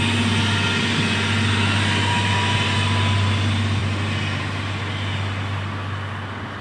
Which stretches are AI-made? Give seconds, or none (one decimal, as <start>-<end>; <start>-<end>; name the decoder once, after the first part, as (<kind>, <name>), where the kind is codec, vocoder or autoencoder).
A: none